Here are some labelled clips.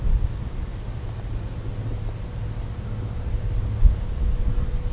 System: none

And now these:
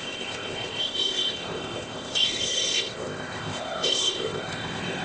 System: codec, ZipCodec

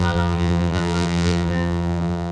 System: vocoder, BigVGAN v2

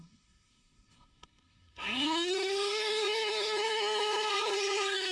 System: codec, SNAC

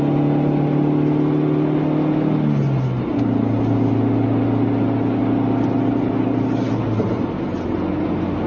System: none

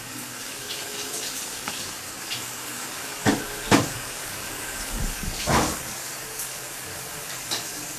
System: codec, DAC